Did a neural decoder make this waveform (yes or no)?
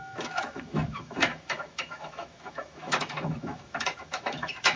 yes